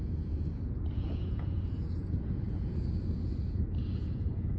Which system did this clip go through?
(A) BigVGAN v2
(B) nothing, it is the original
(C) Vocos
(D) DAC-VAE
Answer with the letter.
C